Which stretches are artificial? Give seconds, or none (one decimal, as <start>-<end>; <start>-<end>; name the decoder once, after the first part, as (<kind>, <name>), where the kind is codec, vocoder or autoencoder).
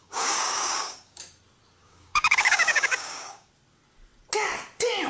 0.0-1.2 (codec, DAC); 1.8-3.5